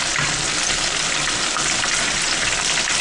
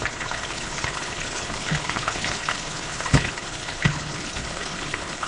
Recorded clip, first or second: first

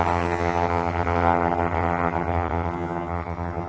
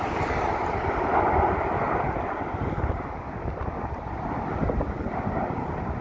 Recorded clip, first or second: second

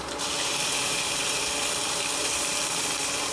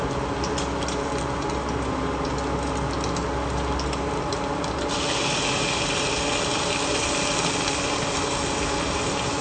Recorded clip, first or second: second